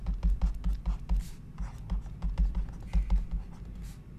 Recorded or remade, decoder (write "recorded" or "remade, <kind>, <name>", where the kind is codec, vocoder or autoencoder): recorded